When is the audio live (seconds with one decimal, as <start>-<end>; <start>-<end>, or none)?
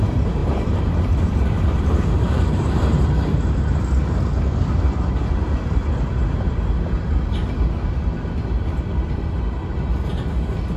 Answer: 0.0-0.4; 3.8-10.8